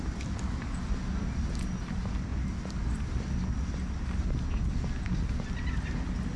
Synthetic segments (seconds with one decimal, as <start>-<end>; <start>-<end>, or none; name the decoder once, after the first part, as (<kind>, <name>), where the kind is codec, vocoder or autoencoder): none